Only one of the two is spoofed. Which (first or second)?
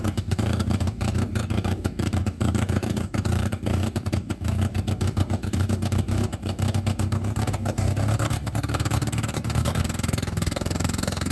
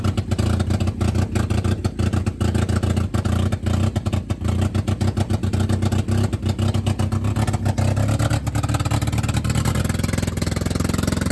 first